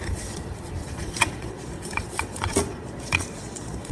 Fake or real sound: fake